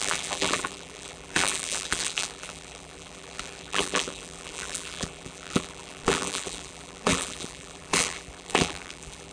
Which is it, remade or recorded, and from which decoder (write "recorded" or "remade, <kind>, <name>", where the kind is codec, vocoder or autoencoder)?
remade, vocoder, BigVGAN v2